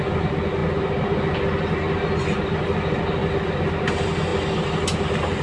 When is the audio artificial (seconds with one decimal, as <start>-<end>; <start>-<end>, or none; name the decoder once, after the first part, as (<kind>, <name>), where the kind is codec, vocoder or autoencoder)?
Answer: none